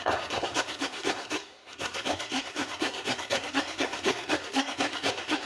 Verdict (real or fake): fake